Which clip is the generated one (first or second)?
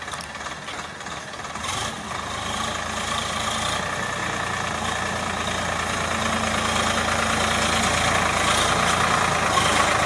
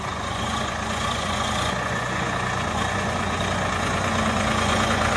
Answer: second